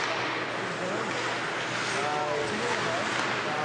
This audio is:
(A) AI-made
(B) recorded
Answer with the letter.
B